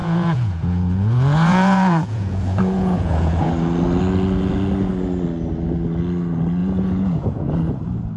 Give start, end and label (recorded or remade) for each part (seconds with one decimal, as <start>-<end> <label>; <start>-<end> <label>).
0.0-3.5 remade; 3.5-6.6 recorded; 6.6-7.7 remade; 7.7-8.2 recorded